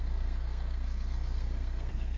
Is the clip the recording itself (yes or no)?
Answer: no